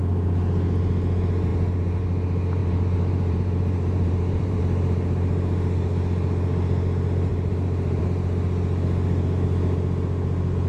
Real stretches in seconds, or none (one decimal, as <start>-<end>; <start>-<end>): 0.0-2.6; 4.6-7.3; 8.0-10.7